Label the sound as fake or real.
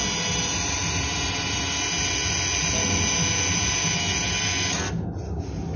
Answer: real